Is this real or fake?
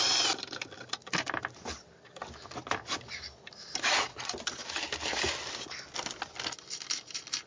real